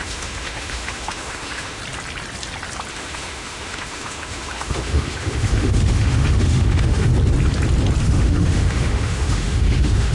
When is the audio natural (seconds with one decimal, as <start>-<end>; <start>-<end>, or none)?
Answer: 1.8-2.9; 7.1-8.0